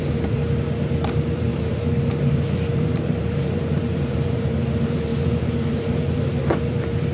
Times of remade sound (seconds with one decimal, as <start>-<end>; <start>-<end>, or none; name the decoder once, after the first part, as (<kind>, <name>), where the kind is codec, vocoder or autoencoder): 0.0-0.4 (vocoder, BigVGAN v2); 1.0-7.1